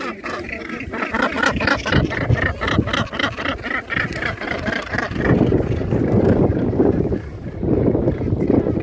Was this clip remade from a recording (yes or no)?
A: yes